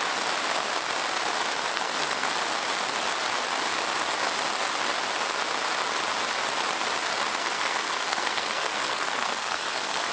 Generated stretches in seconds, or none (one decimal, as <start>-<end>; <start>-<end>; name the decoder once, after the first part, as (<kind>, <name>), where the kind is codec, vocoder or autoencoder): 1.7-2.3 (codec, SNAC); 7.4-10.1